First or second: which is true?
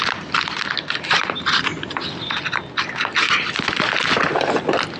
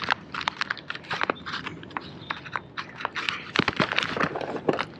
first